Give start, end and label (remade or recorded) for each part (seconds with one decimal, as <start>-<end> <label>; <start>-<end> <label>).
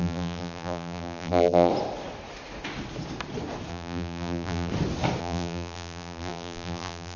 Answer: 0.0-1.7 remade; 1.7-3.7 recorded; 3.7-4.7 remade; 4.7-5.2 recorded; 5.2-7.2 remade